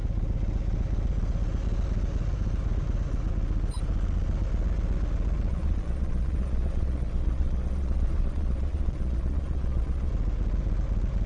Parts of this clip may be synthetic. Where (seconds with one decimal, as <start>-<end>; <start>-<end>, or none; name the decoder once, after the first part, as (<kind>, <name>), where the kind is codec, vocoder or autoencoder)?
5.5-10.1 (vocoder, Vocos)